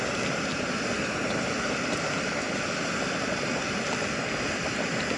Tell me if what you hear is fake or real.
real